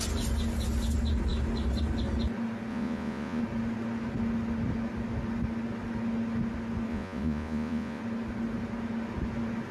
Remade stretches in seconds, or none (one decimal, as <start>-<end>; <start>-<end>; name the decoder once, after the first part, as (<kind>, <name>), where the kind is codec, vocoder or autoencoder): 2.7-3.4 (vocoder, Vocos); 6.9-8.0